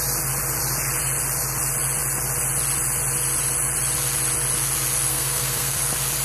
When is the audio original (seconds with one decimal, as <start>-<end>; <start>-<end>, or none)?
0.0-5.1; 5.8-6.2